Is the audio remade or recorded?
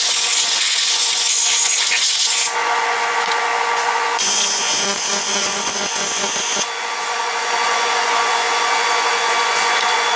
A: remade